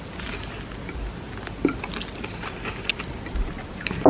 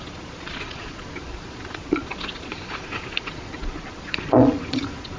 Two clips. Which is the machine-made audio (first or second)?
second